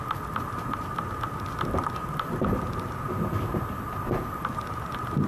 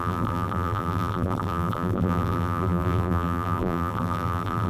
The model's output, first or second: second